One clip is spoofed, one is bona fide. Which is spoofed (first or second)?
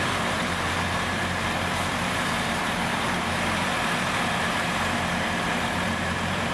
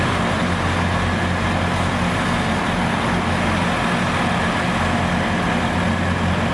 first